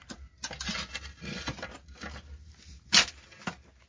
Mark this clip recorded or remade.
recorded